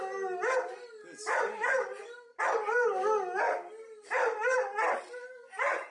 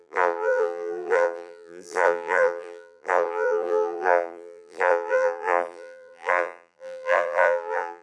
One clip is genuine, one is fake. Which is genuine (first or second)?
first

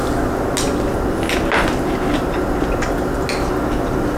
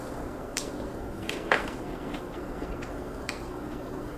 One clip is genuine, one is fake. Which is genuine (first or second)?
first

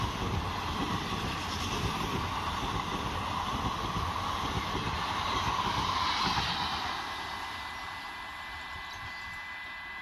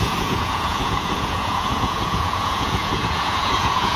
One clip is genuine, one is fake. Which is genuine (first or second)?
first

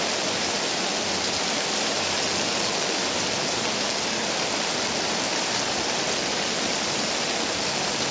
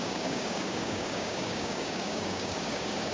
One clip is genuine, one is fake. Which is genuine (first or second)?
first